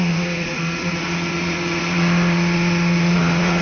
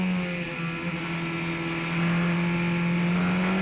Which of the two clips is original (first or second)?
second